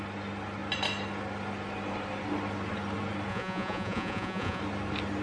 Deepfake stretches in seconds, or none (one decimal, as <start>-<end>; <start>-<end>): 3.3-4.6